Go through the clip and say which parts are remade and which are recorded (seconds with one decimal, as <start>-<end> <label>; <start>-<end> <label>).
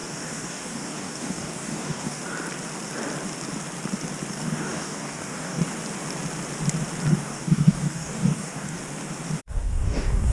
0.0-2.2 remade; 2.2-4.3 recorded; 4.3-5.6 remade; 5.6-7.1 recorded; 7.1-8.8 remade; 8.8-9.4 recorded; 9.4-10.3 remade